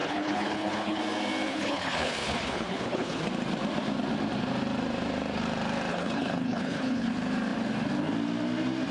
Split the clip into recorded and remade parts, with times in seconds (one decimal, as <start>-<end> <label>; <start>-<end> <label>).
0.0-1.0 remade; 1.0-1.5 recorded; 1.5-3.2 remade; 3.2-5.9 recorded; 5.9-7.1 remade; 7.1-8.9 recorded